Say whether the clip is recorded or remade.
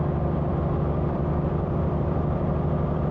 remade